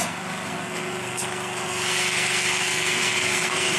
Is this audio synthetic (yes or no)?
yes